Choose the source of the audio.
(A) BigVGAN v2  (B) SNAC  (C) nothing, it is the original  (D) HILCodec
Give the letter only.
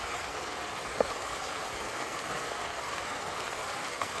B